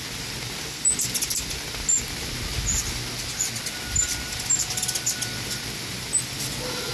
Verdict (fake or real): real